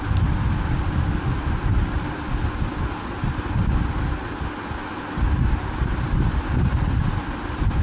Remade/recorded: recorded